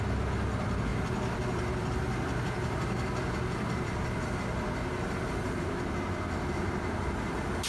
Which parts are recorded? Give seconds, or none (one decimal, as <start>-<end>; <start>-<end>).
0.0-0.9; 5.5-7.7